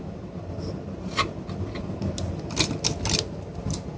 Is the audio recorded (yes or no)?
yes